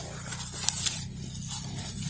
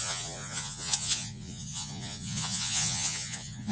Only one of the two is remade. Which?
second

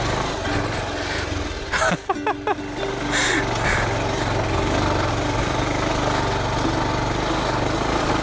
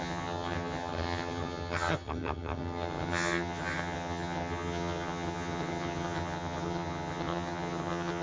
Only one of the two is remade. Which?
second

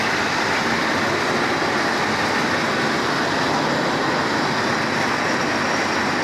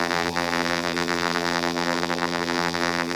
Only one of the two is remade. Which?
second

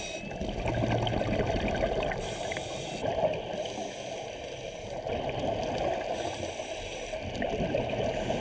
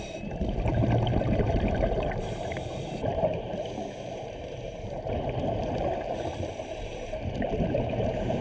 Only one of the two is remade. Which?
second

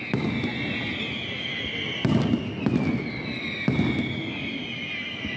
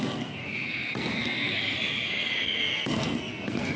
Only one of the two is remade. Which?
second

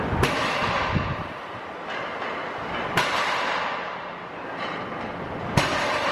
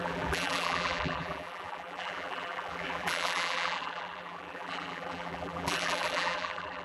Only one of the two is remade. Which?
second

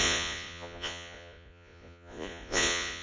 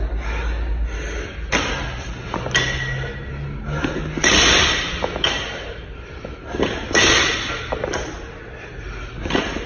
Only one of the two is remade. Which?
first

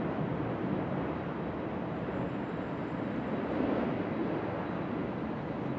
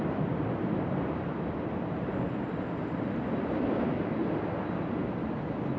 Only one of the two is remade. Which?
second